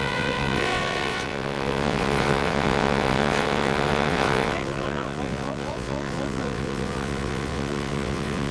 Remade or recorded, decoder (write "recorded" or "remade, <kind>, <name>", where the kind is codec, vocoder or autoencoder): remade, vocoder, WaveNeXt